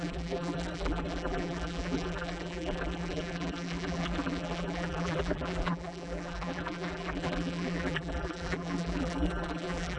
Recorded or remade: remade